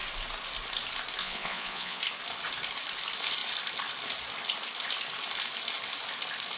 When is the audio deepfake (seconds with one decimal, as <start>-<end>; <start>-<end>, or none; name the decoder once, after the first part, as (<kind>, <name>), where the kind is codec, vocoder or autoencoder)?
1.2-2.0 (vocoder, Vocos)